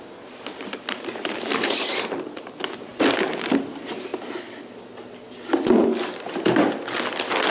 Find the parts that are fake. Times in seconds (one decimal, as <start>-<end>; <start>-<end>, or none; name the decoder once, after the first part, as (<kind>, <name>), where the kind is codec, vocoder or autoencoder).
2.9-3.5 (vocoder, BigVGAN v2)